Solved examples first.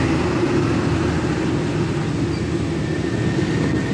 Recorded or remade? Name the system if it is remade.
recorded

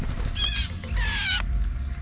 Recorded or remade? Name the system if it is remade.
recorded